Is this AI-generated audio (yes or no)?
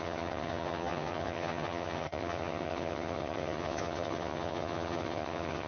yes